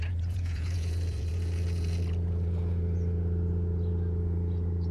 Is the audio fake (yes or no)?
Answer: yes